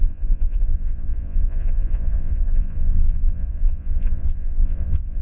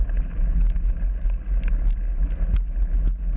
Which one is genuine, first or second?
second